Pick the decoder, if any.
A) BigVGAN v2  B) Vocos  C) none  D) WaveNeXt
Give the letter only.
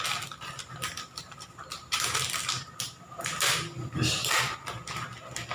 C